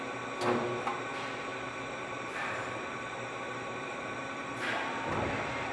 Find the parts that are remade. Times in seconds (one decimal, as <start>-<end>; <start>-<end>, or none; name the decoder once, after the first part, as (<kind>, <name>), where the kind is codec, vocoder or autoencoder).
1.5-4.9 (vocoder, BigVGAN v2)

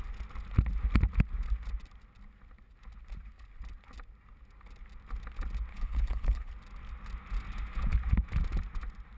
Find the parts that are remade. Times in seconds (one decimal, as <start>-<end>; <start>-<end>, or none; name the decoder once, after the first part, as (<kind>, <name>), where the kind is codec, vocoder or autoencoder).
5.7-6.5 (codec, HILCodec)

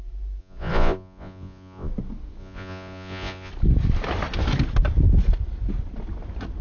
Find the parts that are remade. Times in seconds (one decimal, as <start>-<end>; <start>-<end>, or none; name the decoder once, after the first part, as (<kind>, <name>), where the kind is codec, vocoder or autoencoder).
0.4-1.9 (vocoder, Vocos); 2.4-3.5

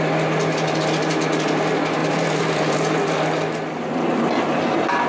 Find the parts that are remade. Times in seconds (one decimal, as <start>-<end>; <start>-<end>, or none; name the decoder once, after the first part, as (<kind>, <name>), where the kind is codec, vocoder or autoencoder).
2.0-4.2 (vocoder, BigVGAN v2)

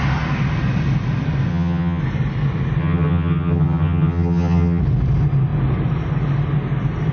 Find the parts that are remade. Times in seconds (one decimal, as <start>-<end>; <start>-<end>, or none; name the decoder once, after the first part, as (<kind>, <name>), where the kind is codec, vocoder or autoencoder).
1.5-2.0 (vocoder, HiFi-GAN); 2.8-4.8

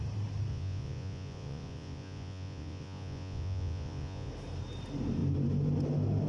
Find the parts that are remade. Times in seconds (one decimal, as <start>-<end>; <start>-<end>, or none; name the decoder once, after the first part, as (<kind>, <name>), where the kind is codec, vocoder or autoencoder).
0.5-4.3 (vocoder, Vocos)

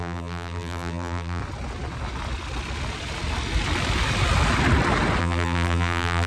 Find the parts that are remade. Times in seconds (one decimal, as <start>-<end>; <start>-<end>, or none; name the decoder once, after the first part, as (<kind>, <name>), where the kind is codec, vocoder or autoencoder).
0.0-1.4 (vocoder, BigVGAN v2); 5.2-6.3